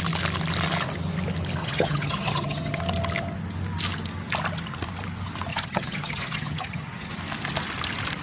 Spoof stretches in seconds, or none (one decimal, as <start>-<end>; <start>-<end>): 1.6-2.8; 5.5-7.1